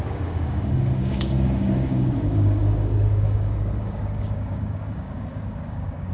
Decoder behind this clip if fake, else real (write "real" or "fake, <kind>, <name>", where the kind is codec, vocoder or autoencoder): fake, codec, DAC